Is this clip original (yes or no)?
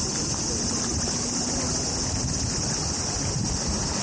yes